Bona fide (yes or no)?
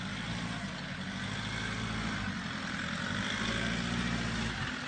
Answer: yes